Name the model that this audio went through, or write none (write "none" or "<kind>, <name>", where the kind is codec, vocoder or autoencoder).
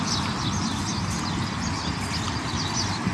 none